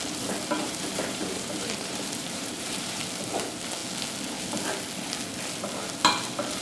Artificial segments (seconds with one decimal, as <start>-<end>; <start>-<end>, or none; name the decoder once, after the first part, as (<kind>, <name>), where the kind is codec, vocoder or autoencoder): 0.6-3.0 (vocoder, BigVGAN v2)